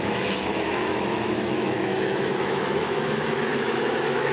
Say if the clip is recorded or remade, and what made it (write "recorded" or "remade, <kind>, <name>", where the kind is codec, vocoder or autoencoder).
remade, autoencoder, DAC-VAE